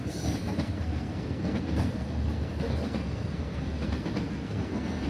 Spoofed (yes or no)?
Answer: yes